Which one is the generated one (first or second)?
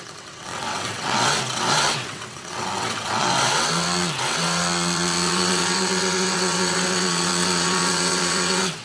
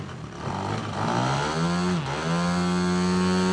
first